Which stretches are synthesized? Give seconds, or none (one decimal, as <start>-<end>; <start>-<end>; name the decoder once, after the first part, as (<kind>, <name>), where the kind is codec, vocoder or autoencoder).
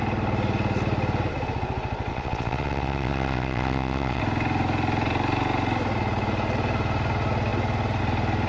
2.1-4.2 (vocoder, WaveNeXt)